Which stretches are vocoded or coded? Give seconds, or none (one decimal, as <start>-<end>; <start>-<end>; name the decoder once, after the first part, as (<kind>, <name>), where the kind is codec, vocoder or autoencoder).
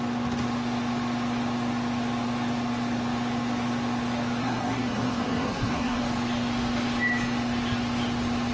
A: 4.4-6.0 (codec, SNAC)